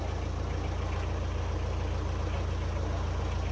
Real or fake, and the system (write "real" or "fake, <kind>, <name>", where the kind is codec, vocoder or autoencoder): real